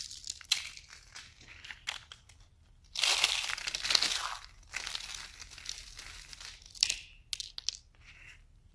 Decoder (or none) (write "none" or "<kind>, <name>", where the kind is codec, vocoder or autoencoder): none